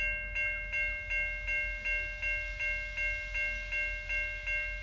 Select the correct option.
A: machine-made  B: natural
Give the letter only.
B